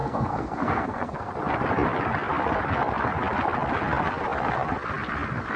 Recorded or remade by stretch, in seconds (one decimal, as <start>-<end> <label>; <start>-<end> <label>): 0.0-1.3 remade; 1.3-5.6 recorded